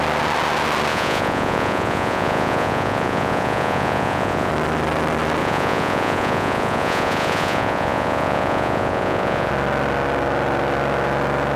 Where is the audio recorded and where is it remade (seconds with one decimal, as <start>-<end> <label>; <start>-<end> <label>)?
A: 0.0-0.9 recorded; 0.9-4.5 remade; 4.5-5.4 recorded; 5.4-9.5 remade; 9.5-11.6 recorded